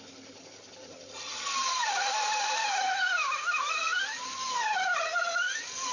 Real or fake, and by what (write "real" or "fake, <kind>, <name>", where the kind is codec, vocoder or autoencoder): real